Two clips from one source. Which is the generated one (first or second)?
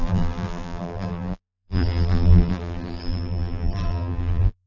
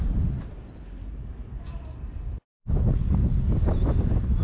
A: first